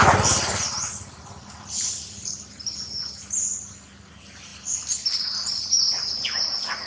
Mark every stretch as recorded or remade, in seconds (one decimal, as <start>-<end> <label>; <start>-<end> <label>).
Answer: 0.0-6.9 recorded